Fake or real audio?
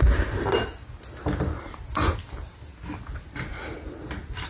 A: real